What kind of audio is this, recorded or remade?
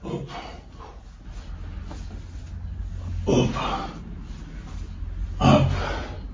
recorded